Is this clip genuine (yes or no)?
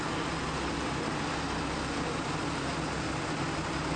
yes